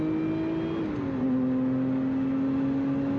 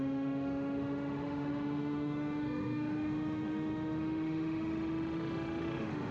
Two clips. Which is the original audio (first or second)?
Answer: first